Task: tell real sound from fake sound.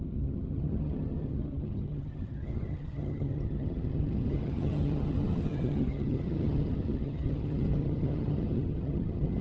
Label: fake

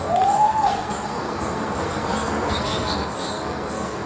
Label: fake